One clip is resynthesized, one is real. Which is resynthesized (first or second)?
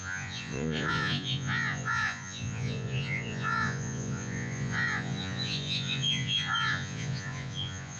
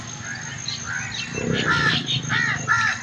first